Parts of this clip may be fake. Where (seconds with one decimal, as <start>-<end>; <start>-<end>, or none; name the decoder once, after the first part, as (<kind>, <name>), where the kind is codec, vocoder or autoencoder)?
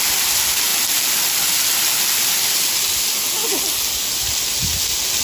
none